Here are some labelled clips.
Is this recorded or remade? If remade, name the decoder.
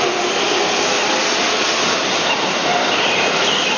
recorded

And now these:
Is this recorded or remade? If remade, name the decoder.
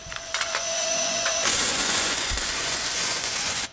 remade, vocoder, Vocos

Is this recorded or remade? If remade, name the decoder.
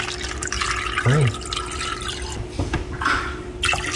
recorded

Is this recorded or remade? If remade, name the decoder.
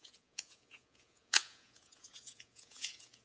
remade, vocoder, Vocos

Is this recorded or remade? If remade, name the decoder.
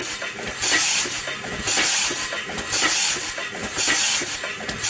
recorded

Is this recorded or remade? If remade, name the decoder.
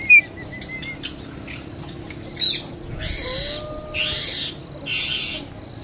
recorded